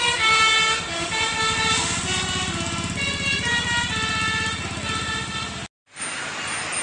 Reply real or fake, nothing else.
real